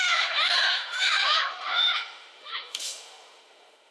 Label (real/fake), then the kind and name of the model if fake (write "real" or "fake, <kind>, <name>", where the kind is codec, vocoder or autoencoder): fake, autoencoder, DAC-VAE